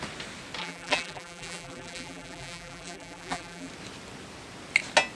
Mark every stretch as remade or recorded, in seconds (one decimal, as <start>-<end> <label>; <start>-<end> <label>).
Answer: 0.0-0.6 recorded; 0.6-3.7 remade; 3.7-5.2 recorded